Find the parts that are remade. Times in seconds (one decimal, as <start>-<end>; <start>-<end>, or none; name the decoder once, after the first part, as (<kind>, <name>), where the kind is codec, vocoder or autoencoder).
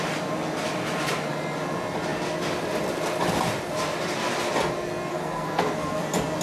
5.1-6.0 (codec, SNAC)